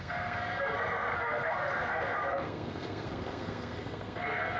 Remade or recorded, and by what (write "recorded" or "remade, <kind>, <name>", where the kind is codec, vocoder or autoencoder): remade, codec, SNAC